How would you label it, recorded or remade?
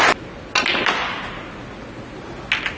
recorded